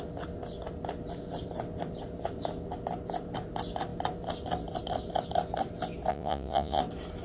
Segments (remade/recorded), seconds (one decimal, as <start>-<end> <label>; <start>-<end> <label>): 0.0-6.1 recorded; 6.1-6.8 remade; 6.8-7.2 recorded